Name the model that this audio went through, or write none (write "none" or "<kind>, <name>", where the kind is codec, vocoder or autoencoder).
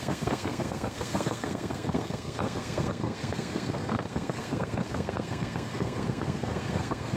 codec, SNAC